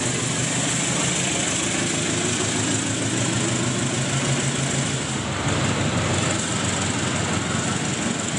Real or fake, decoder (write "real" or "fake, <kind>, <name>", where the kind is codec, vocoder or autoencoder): real